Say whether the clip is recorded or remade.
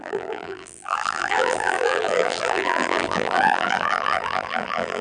remade